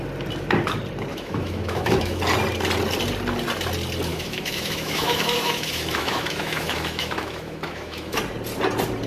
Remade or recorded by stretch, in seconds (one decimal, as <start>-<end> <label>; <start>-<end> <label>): 0.0-1.1 recorded; 1.1-2.2 remade; 2.2-4.1 recorded; 4.1-8.2 remade; 8.2-9.1 recorded